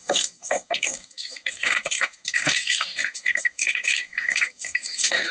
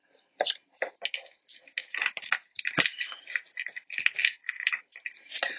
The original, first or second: second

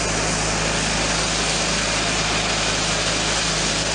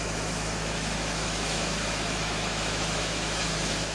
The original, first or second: first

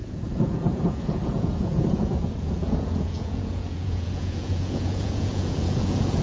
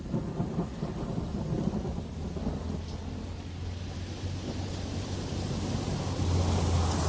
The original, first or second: second